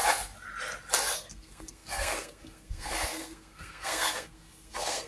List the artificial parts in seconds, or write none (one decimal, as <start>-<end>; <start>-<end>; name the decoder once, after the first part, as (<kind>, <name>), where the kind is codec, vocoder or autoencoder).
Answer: 1.1-5.1 (codec, SNAC)